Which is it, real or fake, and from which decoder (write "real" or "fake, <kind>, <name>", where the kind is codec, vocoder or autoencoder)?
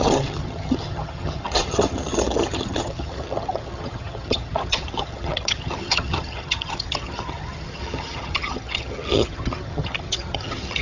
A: fake, vocoder, HiFi-GAN